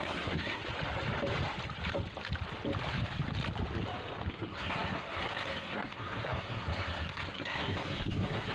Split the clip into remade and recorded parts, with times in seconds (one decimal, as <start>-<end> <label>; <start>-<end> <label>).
0.0-0.6 remade; 0.6-4.3 recorded; 4.3-8.5 remade